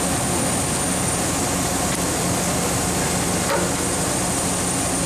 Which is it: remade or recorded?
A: recorded